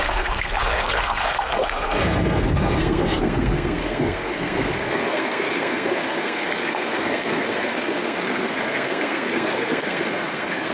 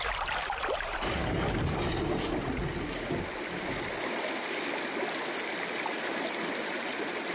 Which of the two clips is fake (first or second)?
first